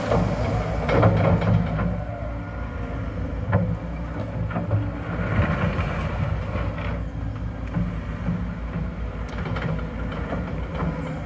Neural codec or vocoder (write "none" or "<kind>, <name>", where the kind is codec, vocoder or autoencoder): none